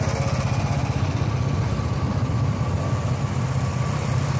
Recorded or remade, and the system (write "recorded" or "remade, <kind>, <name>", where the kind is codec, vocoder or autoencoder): recorded